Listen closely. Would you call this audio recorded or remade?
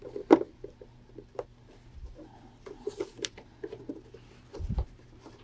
recorded